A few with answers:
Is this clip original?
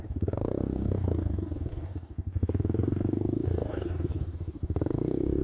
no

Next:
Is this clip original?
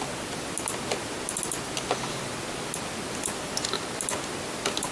yes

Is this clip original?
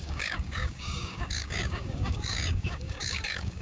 no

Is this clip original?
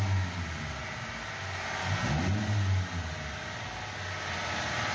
yes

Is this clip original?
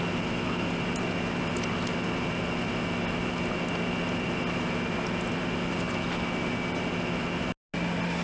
yes